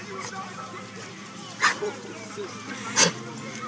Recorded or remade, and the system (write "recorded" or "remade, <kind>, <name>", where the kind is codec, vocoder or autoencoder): recorded